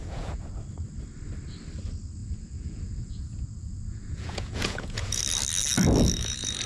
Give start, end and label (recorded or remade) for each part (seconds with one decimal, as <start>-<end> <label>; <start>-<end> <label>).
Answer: 0.0-0.6 remade; 0.6-2.2 recorded; 2.2-5.2 remade; 5.2-6.7 recorded